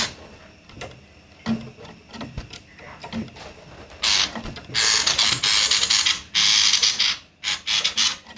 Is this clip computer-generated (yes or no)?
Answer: no